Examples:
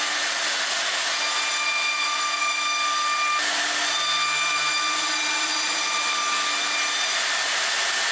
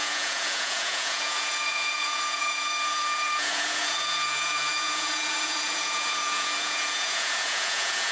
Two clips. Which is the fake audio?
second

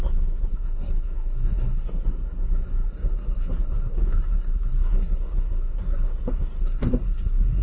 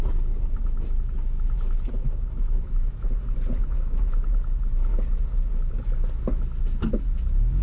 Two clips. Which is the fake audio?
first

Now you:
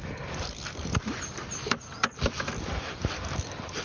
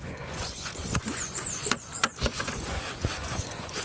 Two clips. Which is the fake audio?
second